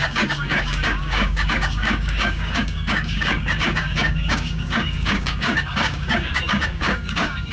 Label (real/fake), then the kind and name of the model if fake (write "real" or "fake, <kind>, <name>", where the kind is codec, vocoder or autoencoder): fake, codec, DAC